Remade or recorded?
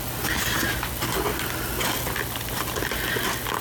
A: recorded